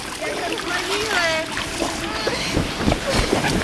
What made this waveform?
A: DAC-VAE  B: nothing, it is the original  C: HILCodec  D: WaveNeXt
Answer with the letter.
B